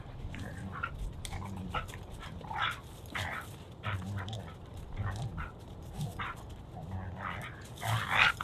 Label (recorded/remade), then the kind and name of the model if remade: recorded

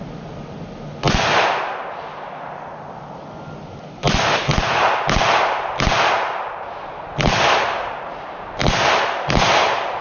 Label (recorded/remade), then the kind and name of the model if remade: recorded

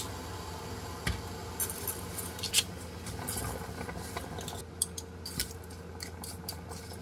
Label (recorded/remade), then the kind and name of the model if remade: recorded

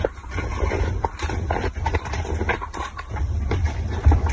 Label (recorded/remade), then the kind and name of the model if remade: remade, vocoder, BigVGAN v2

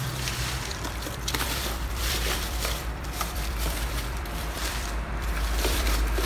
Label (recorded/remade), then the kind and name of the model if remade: remade, vocoder, BigVGAN v2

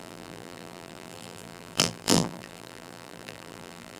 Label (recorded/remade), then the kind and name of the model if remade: remade, vocoder, BigVGAN v2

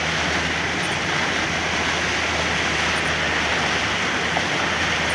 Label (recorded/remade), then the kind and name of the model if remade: recorded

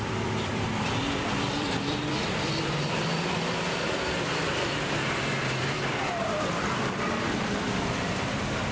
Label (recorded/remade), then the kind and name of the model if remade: remade, vocoder, BigVGAN v2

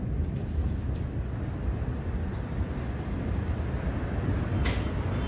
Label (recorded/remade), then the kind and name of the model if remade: recorded